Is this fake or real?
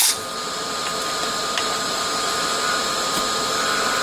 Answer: fake